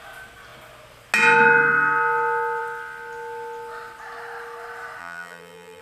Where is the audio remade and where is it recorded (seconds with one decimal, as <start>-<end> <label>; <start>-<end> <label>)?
0.0-5.0 recorded; 5.0-5.8 remade